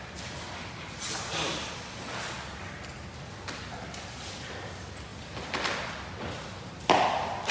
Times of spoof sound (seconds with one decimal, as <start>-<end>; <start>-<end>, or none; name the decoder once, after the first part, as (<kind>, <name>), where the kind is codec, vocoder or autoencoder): none